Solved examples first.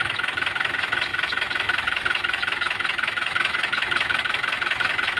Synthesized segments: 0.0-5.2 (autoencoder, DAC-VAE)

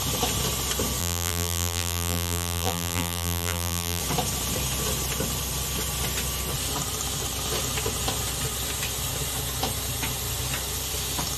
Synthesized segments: 1.0-4.0 (vocoder, BigVGAN v2)

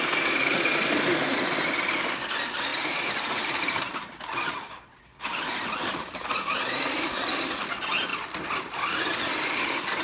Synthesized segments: none